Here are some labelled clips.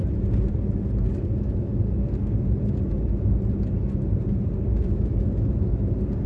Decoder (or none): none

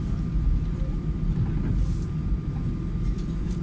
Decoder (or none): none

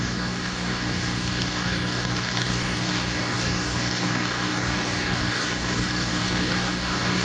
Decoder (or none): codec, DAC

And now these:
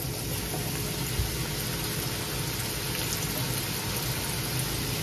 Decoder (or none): none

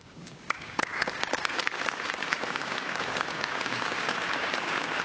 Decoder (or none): codec, DAC